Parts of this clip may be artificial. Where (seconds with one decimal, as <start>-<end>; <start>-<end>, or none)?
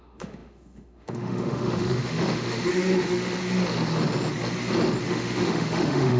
0.0-3.4; 5.0-6.2